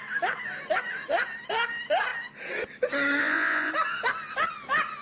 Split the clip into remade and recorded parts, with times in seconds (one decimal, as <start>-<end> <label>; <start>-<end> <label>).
0.0-3.2 recorded; 3.2-3.7 remade; 3.7-5.0 recorded

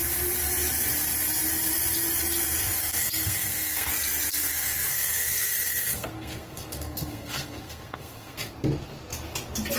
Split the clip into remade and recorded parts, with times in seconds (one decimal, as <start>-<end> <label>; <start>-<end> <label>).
0.0-2.6 recorded; 2.6-3.9 remade; 3.9-4.3 recorded; 4.3-8.5 remade; 8.5-9.8 recorded

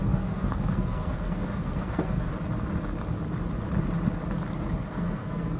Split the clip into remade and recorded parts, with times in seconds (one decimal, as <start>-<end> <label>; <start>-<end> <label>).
0.0-2.3 remade; 2.3-4.9 recorded; 4.9-5.6 remade